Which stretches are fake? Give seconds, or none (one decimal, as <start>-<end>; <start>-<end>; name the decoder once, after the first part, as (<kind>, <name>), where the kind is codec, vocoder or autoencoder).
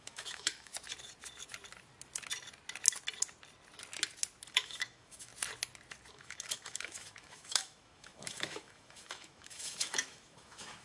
0.0-0.7 (autoencoder, DAC-VAE); 4.5-5.3; 6.1-10.8